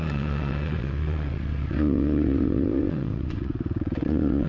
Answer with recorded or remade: remade